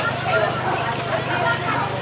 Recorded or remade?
recorded